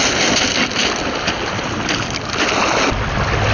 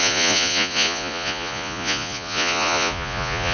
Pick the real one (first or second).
first